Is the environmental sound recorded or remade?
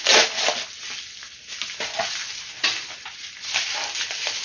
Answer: recorded